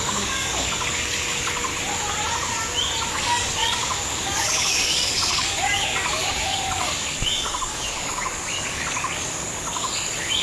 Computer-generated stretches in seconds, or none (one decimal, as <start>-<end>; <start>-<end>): 0.0-1.7; 3.1-10.4